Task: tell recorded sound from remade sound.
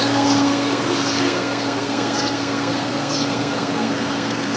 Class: remade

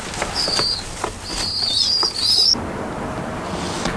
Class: recorded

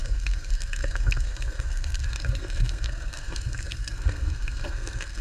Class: remade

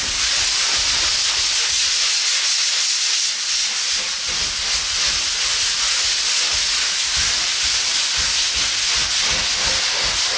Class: recorded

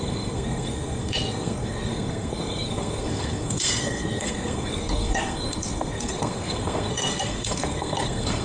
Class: remade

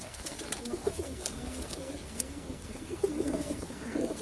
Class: remade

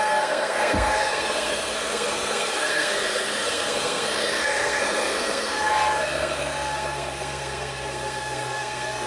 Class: remade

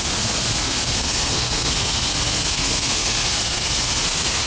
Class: remade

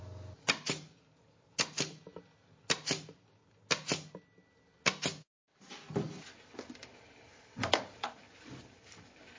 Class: recorded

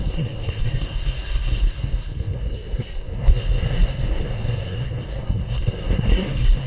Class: remade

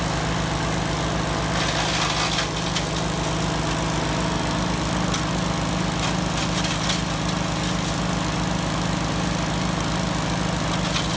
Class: recorded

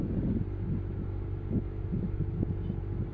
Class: recorded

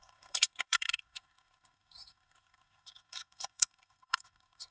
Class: remade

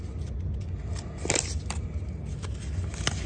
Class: recorded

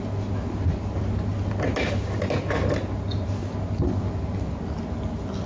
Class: recorded